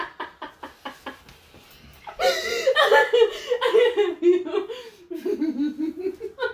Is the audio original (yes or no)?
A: yes